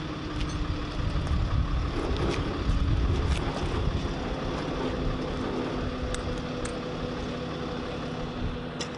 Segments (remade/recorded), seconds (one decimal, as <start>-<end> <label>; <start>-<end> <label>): 0.0-9.0 recorded